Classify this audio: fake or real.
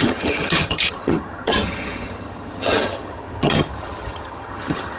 fake